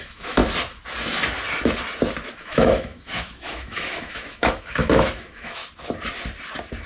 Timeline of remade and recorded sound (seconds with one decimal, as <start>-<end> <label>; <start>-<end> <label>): 0.0-0.4 remade; 0.4-2.4 recorded; 2.4-5.6 remade; 5.6-6.9 recorded